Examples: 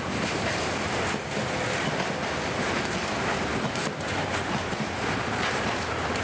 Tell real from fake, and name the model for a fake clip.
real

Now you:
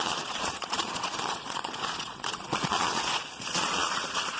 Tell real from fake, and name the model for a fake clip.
fake, vocoder, Vocos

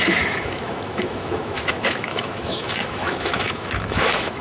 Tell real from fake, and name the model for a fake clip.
fake, autoencoder, DAC-VAE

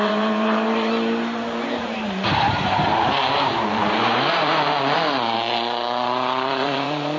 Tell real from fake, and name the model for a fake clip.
fake, vocoder, BigVGAN v2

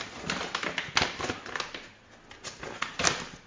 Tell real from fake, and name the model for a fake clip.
real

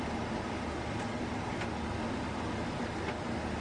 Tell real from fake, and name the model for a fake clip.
real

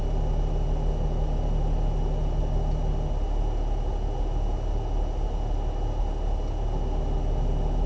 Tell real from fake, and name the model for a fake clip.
real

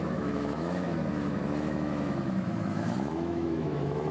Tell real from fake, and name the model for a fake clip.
fake, autoencoder, DAC-VAE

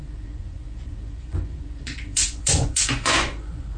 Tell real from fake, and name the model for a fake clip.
fake, vocoder, Vocos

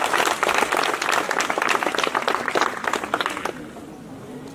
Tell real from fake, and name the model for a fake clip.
real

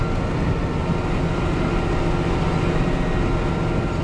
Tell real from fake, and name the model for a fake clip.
real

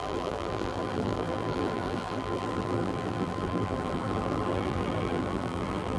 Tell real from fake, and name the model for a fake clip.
fake, vocoder, BigVGAN v2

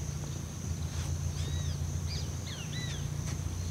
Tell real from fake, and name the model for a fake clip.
real